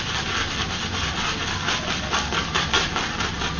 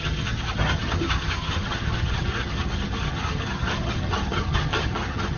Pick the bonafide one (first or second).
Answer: first